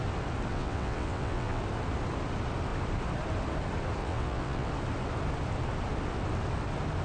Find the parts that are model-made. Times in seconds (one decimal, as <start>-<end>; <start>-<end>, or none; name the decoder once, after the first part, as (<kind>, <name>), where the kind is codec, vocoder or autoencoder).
0.5-1.6 (vocoder, WaveNeXt); 4.0-4.7